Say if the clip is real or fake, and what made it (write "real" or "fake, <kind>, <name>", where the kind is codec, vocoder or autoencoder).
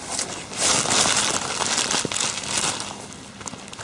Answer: real